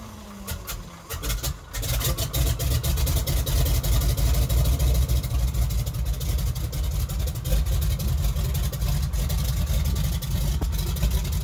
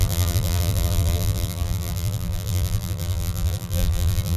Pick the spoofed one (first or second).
second